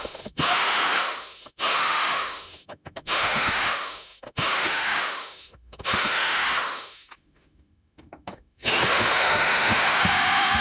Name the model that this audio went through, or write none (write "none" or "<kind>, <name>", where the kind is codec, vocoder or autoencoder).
autoencoder, DAC-VAE